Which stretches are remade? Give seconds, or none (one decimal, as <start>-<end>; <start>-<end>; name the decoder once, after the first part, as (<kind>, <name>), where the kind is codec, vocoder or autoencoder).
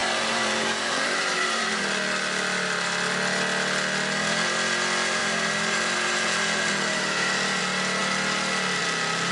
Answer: 0.0-1.8 (vocoder, BigVGAN v2); 5.2-7.6